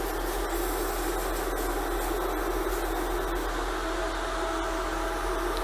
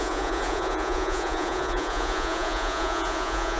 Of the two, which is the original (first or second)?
first